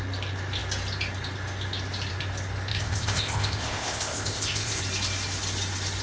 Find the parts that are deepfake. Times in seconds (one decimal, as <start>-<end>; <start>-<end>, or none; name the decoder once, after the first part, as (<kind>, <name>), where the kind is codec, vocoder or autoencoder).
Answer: 2.7-4.8 (codec, ZipCodec)